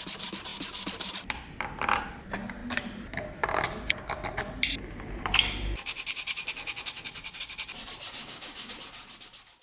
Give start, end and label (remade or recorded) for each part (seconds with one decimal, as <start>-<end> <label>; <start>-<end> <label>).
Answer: 0.0-8.2 recorded; 8.2-8.7 remade; 8.7-9.6 recorded